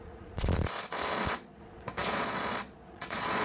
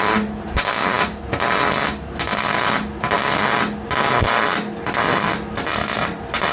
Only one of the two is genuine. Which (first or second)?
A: second